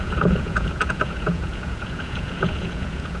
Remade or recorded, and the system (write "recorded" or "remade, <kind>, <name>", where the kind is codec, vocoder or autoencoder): remade, vocoder, Vocos